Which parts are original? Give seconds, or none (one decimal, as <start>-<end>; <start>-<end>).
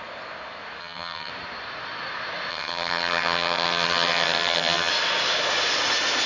0.0-0.8; 1.3-2.5; 4.9-6.3